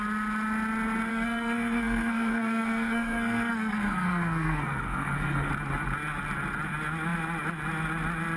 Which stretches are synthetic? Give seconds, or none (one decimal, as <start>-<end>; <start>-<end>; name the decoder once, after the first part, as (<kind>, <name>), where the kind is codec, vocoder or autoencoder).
1.1-5.5 (codec, SNAC)